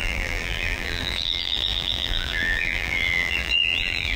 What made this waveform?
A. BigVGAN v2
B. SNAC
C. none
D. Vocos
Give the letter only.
A